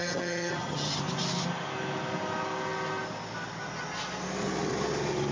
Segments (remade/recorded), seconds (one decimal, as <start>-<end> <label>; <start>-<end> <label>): 0.0-1.0 remade; 1.0-5.3 recorded